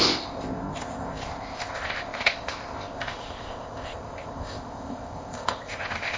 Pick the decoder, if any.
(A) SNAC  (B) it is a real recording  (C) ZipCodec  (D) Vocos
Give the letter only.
C